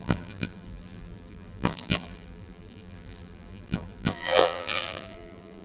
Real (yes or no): no